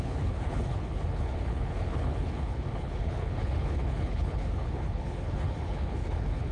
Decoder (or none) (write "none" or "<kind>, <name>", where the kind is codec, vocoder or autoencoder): codec, HILCodec